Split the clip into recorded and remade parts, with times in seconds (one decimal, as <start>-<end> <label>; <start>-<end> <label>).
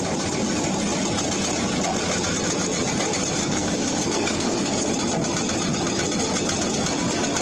0.0-3.4 recorded; 3.4-4.9 remade; 4.9-7.4 recorded